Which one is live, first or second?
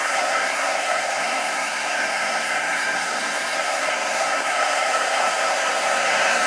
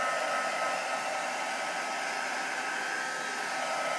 second